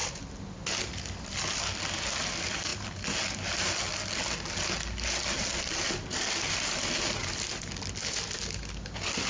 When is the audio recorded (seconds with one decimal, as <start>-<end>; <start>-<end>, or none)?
0.0-9.3